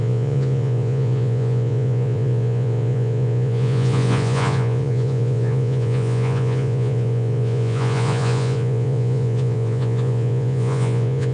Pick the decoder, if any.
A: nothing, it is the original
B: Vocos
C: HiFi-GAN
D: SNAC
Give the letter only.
B